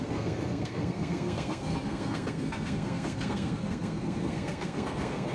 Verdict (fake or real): fake